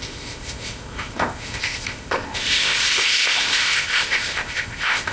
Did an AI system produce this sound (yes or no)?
yes